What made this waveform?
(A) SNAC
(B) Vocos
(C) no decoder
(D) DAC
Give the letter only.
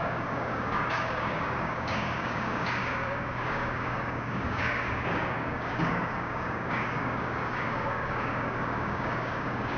D